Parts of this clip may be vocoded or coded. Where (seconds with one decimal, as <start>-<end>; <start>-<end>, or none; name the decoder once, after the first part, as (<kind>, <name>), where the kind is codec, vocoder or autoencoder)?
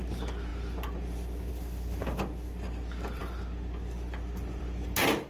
none